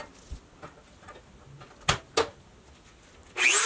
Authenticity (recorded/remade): recorded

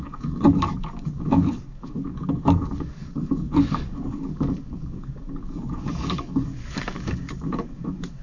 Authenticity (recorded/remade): remade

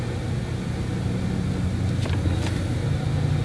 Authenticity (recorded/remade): recorded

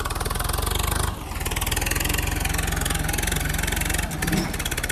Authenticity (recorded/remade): recorded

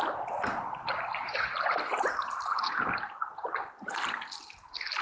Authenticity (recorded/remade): recorded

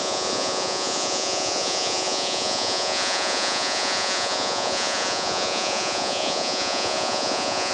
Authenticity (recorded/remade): remade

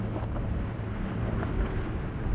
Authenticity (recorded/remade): recorded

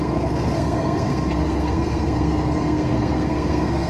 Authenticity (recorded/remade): remade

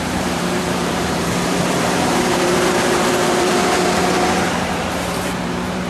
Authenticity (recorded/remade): remade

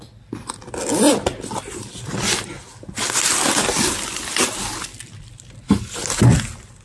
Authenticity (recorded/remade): recorded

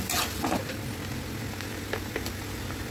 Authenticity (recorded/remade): remade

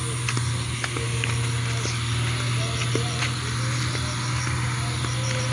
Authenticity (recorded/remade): recorded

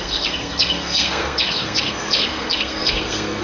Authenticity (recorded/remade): remade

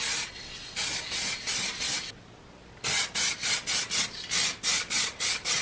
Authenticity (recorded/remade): recorded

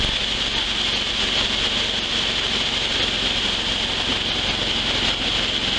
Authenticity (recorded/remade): recorded